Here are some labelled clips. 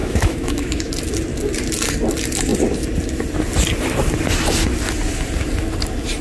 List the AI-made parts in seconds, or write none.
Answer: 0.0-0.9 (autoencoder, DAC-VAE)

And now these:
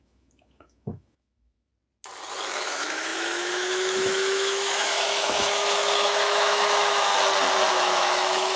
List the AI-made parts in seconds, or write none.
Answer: 0.0-1.7 (autoencoder, DAC-VAE); 2.6-7.1; 7.7-8.6

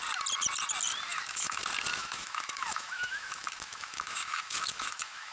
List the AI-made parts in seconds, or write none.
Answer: 1.1-1.6 (autoencoder, DAC-VAE); 2.0-5.3

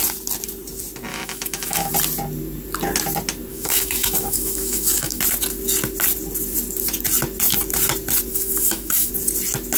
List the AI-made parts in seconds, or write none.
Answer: 1.1-1.9 (autoencoder, DAC-VAE); 3.5-5.2; 8.3-9.1

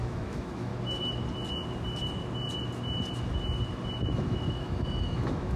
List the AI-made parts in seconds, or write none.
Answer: 0.0-0.7 (autoencoder, DAC-VAE); 4.1-5.6